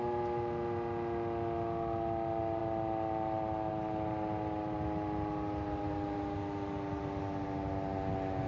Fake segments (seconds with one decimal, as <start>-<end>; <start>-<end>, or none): none